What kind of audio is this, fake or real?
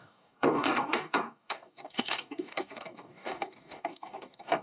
fake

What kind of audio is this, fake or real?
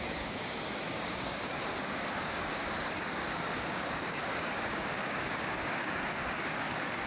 fake